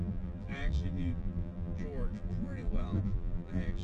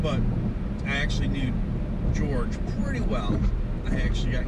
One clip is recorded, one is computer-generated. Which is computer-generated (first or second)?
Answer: first